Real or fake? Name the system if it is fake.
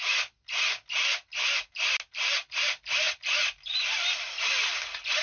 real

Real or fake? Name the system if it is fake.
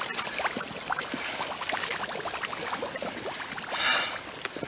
real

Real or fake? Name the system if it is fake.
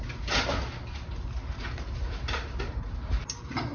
real